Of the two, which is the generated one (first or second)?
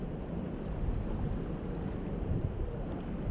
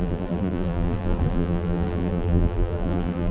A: second